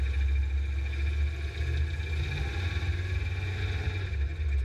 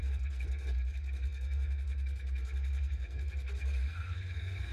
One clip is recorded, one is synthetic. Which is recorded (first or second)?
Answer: first